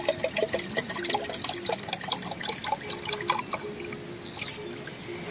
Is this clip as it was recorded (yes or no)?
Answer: yes